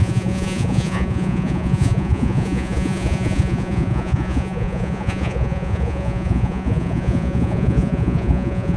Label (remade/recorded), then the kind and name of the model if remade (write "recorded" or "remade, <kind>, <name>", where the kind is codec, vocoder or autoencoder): remade, vocoder, Vocos